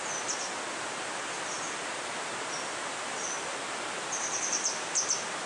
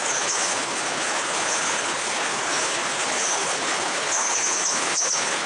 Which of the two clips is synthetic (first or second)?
second